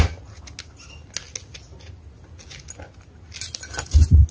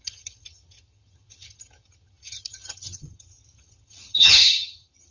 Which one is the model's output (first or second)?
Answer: second